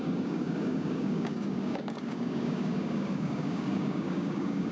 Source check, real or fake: fake